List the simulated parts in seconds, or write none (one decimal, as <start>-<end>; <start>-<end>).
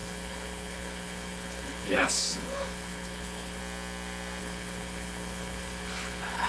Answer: 0.0-3.6; 4.4-6.5